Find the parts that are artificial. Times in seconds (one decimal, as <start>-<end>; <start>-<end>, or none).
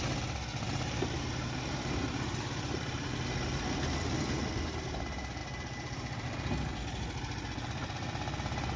0.5-3.1